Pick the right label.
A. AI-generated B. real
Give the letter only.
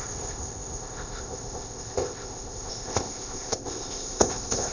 A